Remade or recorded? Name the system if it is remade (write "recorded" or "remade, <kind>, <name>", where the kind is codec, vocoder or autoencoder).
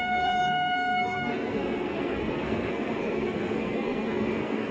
remade, codec, SNAC